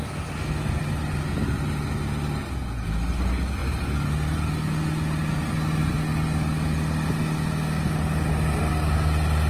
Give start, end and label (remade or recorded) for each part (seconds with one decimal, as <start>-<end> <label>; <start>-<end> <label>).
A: 0.0-9.5 recorded